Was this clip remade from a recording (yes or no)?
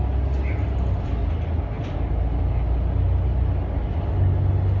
no